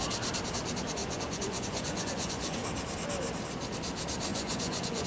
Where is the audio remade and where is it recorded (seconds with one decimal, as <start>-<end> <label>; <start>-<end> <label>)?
0.0-1.0 recorded; 1.0-2.6 remade; 2.6-4.3 recorded; 4.3-5.1 remade